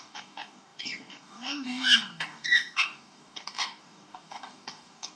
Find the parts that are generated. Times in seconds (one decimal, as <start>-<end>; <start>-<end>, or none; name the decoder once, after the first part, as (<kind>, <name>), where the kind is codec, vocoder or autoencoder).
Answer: 0.0-5.2 (codec, DAC)